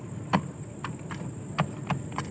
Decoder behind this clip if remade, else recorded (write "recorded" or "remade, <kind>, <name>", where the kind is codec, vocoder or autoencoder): recorded